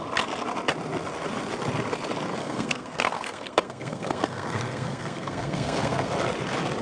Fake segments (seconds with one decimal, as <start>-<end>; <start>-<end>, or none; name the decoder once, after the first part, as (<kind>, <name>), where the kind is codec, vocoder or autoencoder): 2.4-6.1 (codec, SNAC)